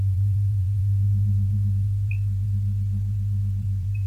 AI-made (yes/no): yes